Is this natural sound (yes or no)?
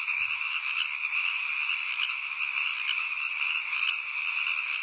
yes